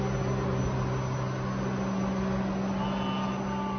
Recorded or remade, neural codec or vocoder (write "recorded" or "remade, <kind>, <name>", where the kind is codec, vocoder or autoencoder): recorded